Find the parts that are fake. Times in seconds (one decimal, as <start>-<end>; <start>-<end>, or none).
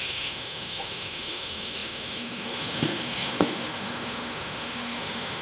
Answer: 0.0-5.4